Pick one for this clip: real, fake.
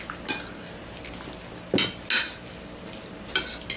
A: real